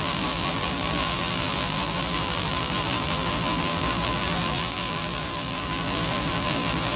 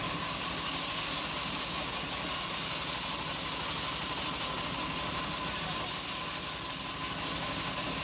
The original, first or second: second